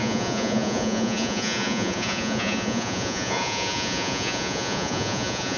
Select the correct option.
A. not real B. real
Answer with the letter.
A